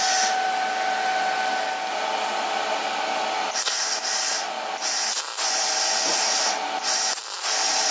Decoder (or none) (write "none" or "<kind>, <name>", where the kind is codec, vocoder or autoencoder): none